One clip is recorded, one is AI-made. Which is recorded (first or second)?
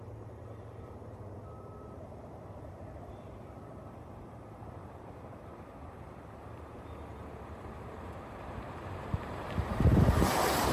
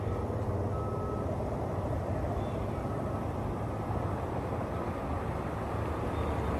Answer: second